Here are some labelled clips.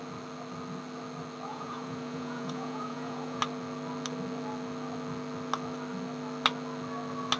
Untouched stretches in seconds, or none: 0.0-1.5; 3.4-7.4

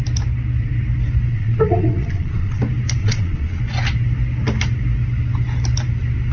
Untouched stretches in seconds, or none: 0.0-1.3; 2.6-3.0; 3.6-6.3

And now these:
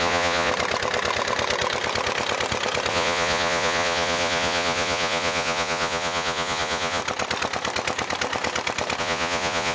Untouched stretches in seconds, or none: 0.5-2.9; 7.0-9.0